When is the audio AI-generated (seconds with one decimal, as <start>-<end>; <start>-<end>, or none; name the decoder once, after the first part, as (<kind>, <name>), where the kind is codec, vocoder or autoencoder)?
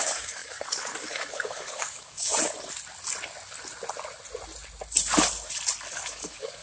0.0-2.3 (codec, DAC); 5.9-6.6